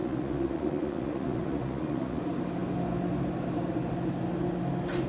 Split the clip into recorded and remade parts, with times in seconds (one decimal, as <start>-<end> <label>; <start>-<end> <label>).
0.0-2.2 remade; 2.2-5.1 recorded